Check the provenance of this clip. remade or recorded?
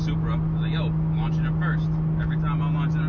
recorded